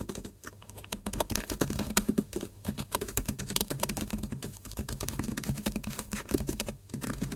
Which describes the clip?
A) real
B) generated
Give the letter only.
B